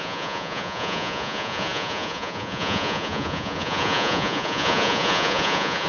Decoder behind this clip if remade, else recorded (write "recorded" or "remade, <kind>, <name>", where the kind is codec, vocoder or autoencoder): remade, vocoder, Vocos